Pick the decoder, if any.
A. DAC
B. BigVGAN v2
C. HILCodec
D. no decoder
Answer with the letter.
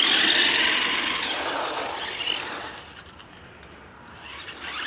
D